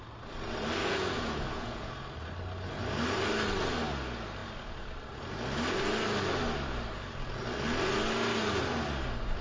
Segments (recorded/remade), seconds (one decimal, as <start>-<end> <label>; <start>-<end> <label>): 0.0-0.8 recorded; 0.8-1.9 remade; 1.9-9.4 recorded